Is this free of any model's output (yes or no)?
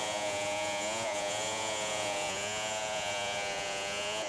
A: no